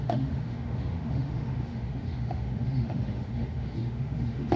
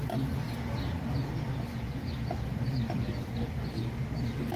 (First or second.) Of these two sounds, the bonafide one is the second